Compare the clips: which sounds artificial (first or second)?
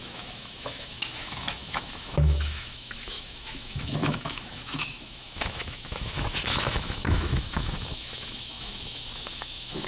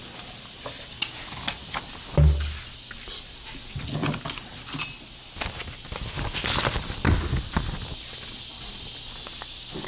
first